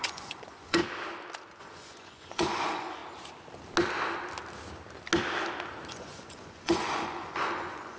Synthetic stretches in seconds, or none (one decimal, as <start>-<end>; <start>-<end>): 0.0-0.8; 1.6-3.0; 5.9-8.0